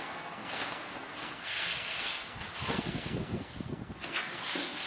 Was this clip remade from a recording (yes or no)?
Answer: yes